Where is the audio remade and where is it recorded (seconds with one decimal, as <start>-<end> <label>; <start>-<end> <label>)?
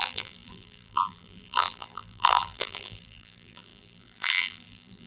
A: 0.0-5.1 remade